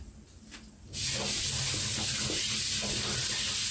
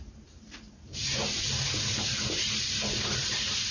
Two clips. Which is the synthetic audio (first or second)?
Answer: second